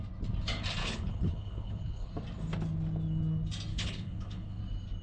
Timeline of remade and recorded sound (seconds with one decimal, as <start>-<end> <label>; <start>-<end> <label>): 0.0-0.8 recorded; 0.8-2.1 remade; 2.1-3.7 recorded; 3.7-4.6 remade; 4.6-5.0 recorded